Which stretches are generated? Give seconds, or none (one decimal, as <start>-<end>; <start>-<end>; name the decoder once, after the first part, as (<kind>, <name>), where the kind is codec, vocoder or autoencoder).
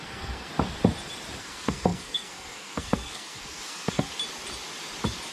0.0-0.5 (codec, SNAC); 1.4-4.1